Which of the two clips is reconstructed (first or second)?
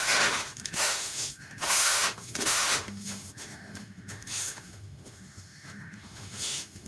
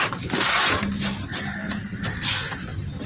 first